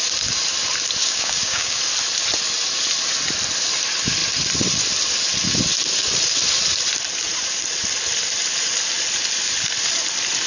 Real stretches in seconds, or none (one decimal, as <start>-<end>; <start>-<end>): 0.0-1.0; 1.8-10.5